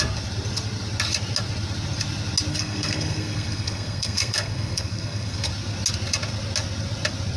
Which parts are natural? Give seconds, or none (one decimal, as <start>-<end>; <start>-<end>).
0.0-2.5; 5.5-7.4